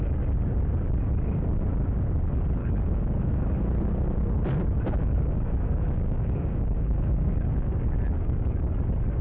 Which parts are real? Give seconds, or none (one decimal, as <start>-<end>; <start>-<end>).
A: 0.0-2.6; 3.3-5.0; 8.7-9.2